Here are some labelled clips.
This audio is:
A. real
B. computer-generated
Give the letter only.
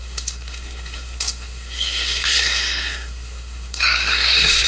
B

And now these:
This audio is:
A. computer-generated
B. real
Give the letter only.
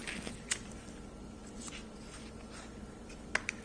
B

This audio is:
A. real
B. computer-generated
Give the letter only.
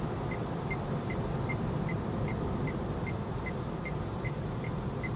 A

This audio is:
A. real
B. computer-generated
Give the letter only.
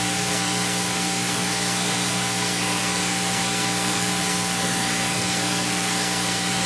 B